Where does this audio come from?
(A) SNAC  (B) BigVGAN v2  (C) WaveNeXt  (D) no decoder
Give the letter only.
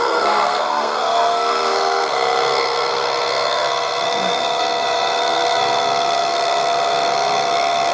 A